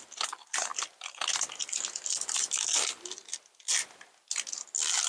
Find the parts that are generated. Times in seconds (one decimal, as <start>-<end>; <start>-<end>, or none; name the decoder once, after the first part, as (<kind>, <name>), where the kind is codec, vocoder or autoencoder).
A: none